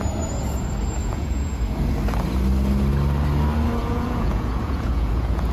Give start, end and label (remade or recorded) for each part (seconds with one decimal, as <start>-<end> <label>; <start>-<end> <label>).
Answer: 0.0-1.0 recorded; 1.0-1.6 remade; 1.6-3.8 recorded; 3.8-5.5 remade